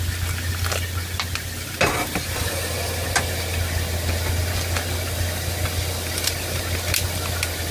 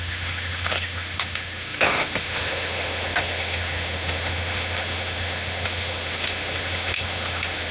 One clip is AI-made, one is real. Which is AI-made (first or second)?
second